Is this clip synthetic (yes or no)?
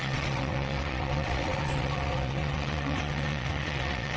yes